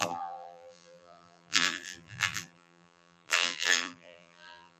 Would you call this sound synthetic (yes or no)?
yes